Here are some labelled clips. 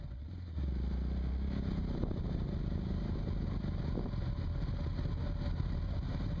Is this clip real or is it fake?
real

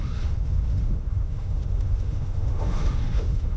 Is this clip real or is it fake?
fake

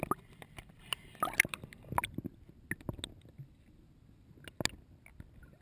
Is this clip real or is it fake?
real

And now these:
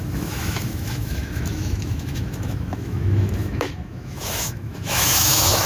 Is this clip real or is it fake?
fake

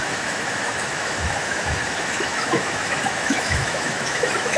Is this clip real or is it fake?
fake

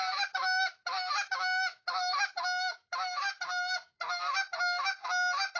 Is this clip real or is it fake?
fake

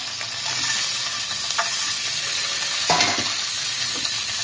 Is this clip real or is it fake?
real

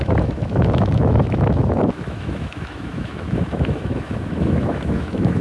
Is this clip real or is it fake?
fake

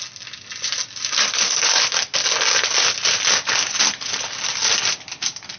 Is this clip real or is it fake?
real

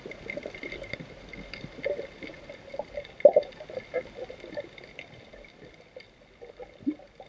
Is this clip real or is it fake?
real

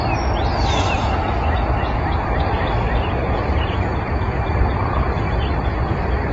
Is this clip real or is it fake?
real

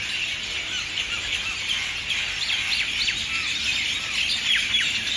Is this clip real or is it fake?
real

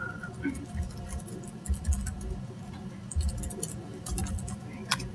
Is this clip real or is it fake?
real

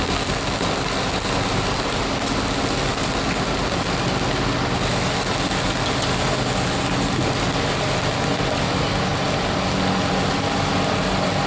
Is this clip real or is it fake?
real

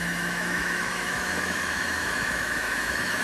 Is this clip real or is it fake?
fake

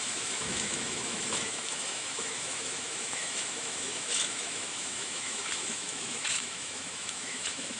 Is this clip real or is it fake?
fake